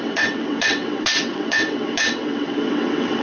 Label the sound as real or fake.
fake